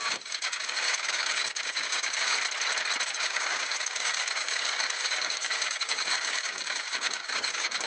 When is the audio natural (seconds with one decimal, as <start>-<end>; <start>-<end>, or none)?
2.4-3.1